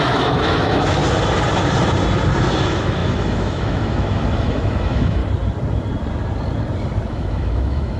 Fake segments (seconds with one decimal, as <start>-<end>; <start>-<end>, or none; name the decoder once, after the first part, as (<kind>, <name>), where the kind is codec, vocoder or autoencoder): 0.0-1.0 (autoencoder, DAC-VAE); 2.4-5.2; 7.1-8.0